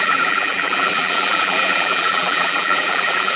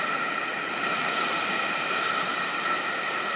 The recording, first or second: second